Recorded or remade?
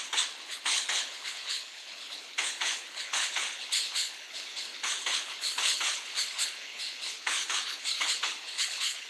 remade